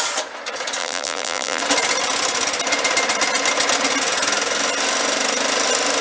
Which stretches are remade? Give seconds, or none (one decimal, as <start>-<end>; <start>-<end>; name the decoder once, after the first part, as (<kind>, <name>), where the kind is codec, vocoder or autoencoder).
0.8-1.6 (vocoder, BigVGAN v2)